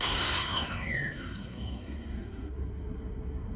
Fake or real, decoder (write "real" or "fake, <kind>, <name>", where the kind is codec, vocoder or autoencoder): fake, codec, SNAC